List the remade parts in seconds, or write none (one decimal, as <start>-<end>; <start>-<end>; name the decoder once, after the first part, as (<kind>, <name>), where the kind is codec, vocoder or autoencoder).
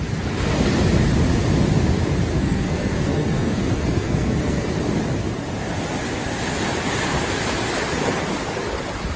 2.3-4.7 (codec, SNAC)